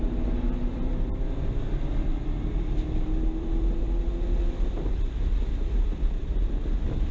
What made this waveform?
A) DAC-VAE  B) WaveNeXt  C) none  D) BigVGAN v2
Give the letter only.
D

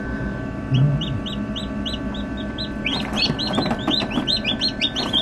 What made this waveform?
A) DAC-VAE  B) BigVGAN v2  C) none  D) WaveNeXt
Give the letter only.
C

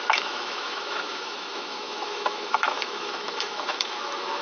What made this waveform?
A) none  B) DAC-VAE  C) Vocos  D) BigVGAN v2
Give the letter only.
B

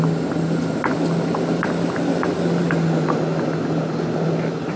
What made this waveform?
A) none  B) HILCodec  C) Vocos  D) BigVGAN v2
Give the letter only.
A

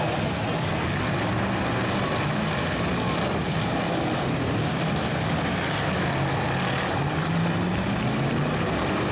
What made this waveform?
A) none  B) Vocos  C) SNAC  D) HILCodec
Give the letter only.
A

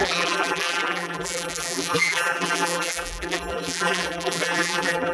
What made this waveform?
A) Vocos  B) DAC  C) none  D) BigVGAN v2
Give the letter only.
D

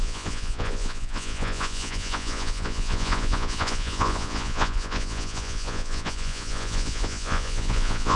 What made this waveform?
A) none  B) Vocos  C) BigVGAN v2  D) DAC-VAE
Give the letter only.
B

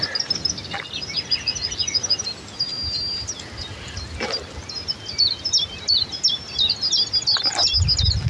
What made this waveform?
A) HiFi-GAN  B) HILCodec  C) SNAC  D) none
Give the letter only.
D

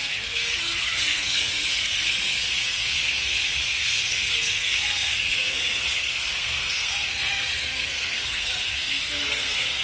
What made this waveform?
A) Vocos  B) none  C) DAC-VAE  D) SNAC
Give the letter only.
D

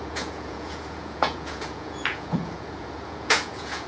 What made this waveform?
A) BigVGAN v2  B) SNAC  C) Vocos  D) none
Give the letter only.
C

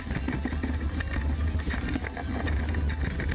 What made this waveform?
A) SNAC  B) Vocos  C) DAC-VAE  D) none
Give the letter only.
D